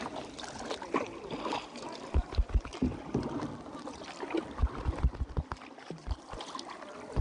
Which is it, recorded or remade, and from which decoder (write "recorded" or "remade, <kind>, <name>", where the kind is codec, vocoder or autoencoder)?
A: recorded